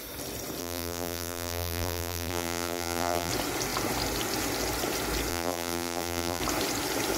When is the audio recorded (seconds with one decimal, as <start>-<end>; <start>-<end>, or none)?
0.0-0.6; 3.3-5.3; 6.4-7.2